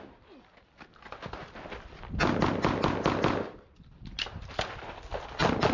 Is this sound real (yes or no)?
yes